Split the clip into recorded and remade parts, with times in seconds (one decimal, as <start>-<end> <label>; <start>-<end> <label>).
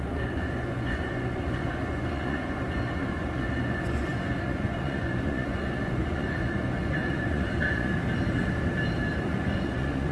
0.0-7.9 remade; 7.9-9.2 recorded; 9.2-10.1 remade